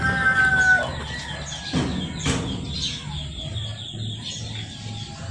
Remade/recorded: recorded